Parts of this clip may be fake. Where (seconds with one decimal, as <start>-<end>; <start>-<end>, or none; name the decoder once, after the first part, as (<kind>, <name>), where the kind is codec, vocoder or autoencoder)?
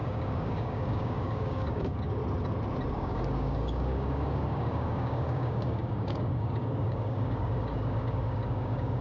0.0-2.2 (codec, DAC); 2.9-9.0